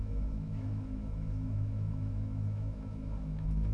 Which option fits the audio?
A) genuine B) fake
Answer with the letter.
B